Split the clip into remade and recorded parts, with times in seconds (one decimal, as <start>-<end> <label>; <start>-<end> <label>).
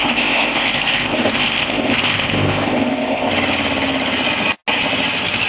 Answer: 0.0-3.3 remade; 3.3-5.5 recorded